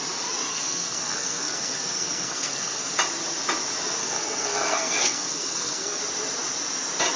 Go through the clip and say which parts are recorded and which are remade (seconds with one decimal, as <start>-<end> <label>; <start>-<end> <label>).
0.0-0.5 recorded; 0.5-2.9 remade; 2.9-4.0 recorded; 4.0-6.0 remade; 6.0-7.2 recorded

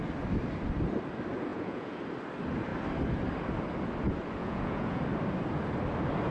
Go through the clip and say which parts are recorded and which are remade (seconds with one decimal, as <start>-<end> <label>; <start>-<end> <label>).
0.0-1.5 recorded; 1.5-2.0 remade; 2.0-4.4 recorded; 4.4-5.0 remade; 5.0-6.3 recorded

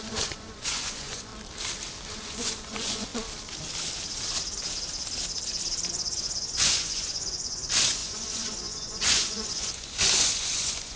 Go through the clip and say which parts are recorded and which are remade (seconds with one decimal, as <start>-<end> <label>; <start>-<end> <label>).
0.0-1.3 remade; 1.3-2.2 recorded; 2.2-3.1 remade; 3.1-5.9 recorded; 5.9-11.0 remade

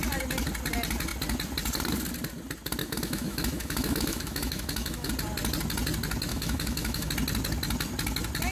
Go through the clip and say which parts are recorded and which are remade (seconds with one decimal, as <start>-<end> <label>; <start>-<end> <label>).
0.0-2.8 recorded; 2.8-5.1 remade; 5.1-6.3 recorded; 6.3-7.1 remade; 7.1-8.5 recorded

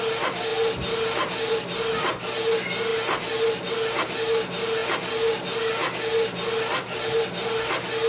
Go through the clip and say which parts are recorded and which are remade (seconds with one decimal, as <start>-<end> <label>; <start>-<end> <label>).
0.0-8.1 recorded